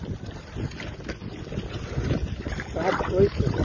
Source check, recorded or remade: recorded